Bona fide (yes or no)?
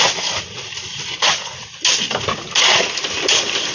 yes